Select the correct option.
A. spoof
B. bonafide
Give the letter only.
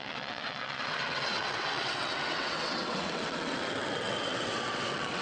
A